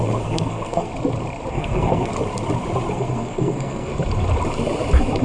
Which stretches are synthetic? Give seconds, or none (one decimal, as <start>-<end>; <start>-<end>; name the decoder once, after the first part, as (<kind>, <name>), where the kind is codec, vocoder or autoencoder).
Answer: 0.0-0.9 (codec, SNAC); 1.5-2.1; 2.9-3.9

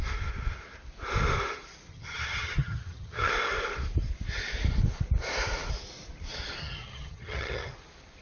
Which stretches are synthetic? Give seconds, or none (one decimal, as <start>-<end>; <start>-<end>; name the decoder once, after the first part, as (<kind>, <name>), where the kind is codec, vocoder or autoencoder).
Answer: 1.9-3.3 (vocoder, HiFi-GAN); 6.6-7.7